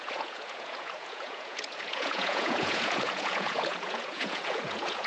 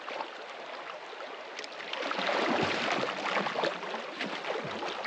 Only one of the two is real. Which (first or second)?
second